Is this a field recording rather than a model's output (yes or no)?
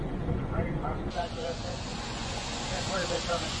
no